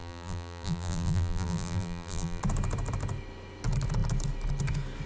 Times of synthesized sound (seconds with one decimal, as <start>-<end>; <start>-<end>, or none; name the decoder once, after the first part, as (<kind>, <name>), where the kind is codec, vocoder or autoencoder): 0.0-2.4 (vocoder, BigVGAN v2)